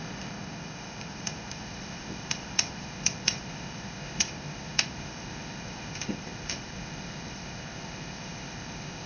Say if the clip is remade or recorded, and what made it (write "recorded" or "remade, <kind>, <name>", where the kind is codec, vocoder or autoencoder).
remade, codec, ZipCodec